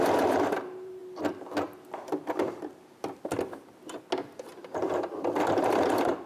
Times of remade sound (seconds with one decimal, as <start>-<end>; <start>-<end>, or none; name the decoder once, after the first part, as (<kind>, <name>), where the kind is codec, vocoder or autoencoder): 0.0-1.0 (vocoder, BigVGAN v2); 4.8-6.3